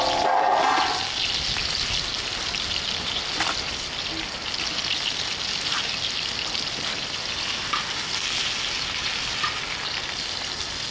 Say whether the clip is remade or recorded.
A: recorded